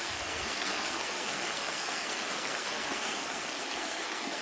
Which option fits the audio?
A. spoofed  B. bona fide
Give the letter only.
A